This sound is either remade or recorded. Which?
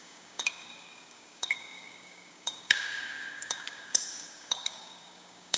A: remade